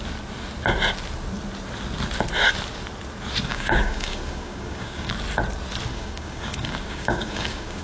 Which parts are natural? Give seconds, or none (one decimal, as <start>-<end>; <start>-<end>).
0.0-3.5; 5.1-5.9